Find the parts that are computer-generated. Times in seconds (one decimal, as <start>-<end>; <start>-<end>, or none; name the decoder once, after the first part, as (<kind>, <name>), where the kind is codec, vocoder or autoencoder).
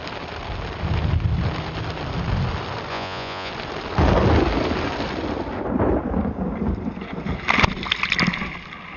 2.9-3.5 (vocoder, Vocos)